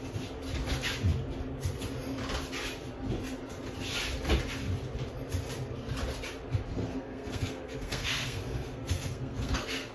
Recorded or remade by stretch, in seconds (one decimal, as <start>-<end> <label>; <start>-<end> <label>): 0.0-6.7 recorded; 6.7-9.9 remade